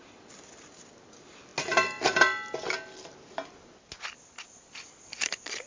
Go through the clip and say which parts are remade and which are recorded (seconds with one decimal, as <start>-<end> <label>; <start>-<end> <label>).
0.0-5.7 recorded